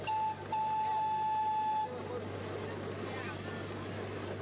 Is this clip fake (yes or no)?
no